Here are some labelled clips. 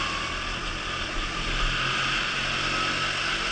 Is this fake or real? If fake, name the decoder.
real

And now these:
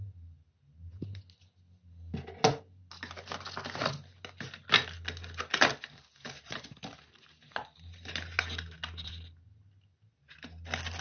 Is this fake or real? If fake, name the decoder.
real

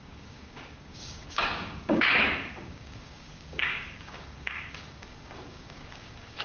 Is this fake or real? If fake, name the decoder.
fake, codec, DAC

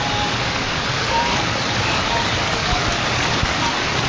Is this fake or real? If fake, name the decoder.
fake, codec, DAC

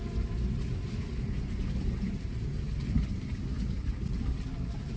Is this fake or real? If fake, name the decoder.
real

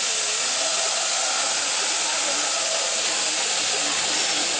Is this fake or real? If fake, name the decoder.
real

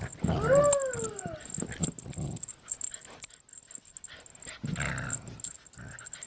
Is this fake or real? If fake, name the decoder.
real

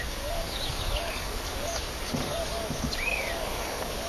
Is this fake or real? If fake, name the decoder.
fake, codec, DAC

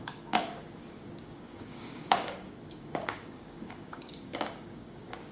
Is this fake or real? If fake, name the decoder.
fake, codec, DAC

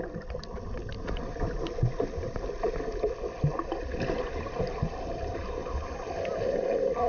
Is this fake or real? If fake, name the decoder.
real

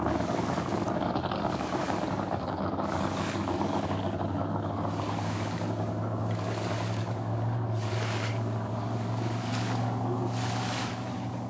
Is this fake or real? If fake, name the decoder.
fake, codec, DAC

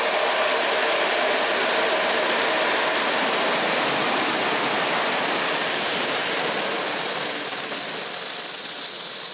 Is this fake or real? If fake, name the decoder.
real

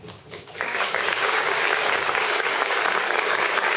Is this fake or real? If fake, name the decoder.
fake, codec, DAC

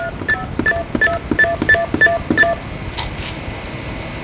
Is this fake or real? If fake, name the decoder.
real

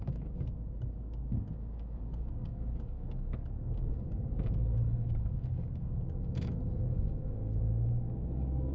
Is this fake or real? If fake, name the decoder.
fake, codec, DAC